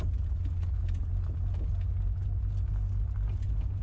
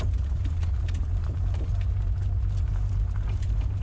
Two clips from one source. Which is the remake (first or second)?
second